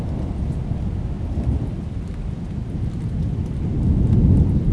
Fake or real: real